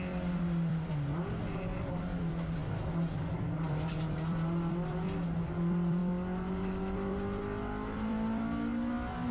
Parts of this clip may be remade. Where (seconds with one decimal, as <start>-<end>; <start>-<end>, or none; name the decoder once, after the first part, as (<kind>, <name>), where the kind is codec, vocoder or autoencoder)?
none